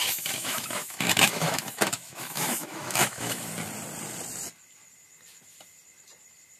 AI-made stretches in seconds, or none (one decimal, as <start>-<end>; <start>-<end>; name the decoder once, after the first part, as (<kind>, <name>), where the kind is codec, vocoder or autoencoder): 0.0-3.5 (autoencoder, DAC-VAE)